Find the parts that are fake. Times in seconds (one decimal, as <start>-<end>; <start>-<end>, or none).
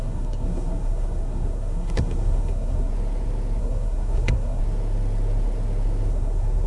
0.0-2.9; 3.6-4.6; 6.1-6.7